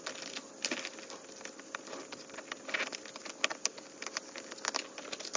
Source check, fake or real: real